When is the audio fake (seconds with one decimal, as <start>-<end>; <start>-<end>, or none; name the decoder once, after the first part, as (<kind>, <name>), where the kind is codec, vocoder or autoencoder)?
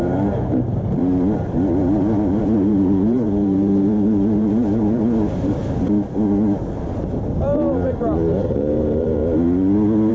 0.0-1.0 (vocoder, BigVGAN v2); 2.4-5.6; 7.2-9.2